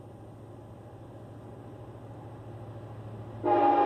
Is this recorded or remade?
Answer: recorded